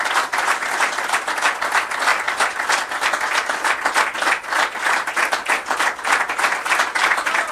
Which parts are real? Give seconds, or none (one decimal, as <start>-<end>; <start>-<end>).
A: 0.0-7.5